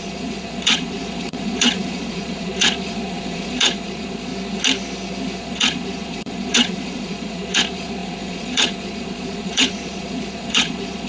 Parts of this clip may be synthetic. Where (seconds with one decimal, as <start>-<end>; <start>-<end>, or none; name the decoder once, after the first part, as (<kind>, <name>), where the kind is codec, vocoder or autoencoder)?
0.0-4.3 (vocoder, Vocos); 5.4-11.1